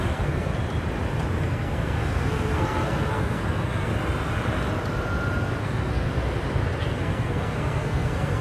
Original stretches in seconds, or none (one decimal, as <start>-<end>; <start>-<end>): 0.5-1.4; 3.9-5.6; 6.1-6.8